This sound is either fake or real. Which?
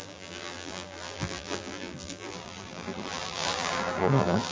fake